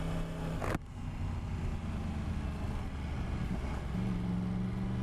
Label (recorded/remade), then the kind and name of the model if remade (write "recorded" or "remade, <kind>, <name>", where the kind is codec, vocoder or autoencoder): recorded